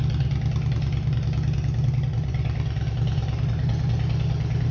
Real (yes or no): yes